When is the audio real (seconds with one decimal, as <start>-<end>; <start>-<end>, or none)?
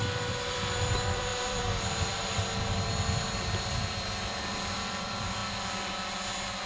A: 5.4-6.7